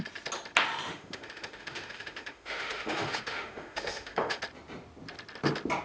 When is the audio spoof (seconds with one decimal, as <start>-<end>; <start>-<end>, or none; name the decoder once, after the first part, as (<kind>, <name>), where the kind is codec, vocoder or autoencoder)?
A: 0.9-4.4 (autoencoder, DAC-VAE)

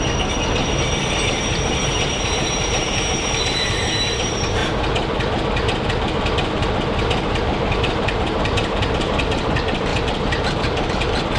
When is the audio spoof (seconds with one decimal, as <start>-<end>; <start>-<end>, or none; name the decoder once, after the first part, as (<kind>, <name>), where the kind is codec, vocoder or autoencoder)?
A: 0.0-4.6 (vocoder, BigVGAN v2); 5.8-11.4

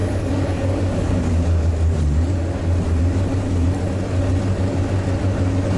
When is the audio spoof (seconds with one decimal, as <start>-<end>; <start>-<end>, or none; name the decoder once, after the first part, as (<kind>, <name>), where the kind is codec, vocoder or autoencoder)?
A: 0.0-1.7 (codec, DAC)

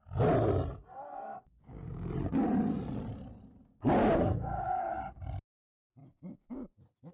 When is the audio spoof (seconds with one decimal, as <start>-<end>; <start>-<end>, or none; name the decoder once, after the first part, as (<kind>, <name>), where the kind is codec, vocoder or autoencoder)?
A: 1.3-2.1 (codec, DAC); 4.0-5.0; 6.0-7.1

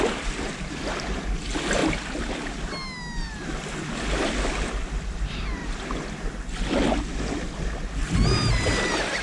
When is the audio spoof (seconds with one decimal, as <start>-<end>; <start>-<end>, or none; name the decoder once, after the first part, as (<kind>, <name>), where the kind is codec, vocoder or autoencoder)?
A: 0.0-1.8 (vocoder, BigVGAN v2); 5.0-5.6; 7.2-9.2

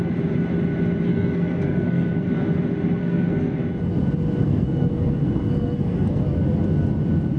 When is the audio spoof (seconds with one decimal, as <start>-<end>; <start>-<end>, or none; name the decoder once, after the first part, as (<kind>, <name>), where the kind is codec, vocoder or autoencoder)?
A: 1.1-2.3 (codec, SNAC); 3.0-3.6; 4.4-6.2

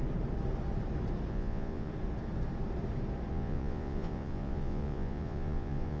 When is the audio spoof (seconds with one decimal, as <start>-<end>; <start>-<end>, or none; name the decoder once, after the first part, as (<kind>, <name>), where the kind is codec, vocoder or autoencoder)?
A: 1.3-1.9 (vocoder, Vocos); 3.3-6.0

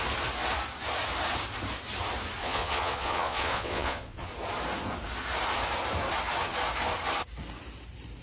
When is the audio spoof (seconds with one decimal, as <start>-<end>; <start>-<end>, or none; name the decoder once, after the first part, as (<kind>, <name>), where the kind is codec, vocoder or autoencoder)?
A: 2.4-4.3 (vocoder, Vocos)